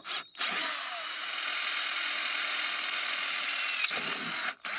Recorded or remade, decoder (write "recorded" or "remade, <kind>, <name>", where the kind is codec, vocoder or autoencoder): recorded